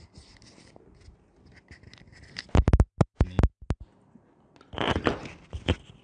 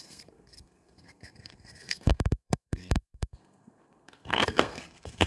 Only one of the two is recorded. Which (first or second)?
first